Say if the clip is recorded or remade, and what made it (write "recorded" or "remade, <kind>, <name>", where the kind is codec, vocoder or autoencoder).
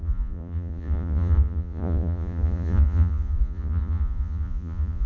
remade, vocoder, Vocos